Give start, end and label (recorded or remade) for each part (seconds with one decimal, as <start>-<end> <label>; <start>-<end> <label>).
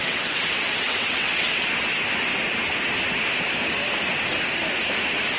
0.0-1.6 remade; 1.6-5.4 recorded